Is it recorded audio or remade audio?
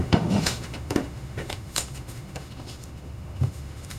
remade